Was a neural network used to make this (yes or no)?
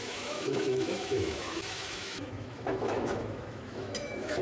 yes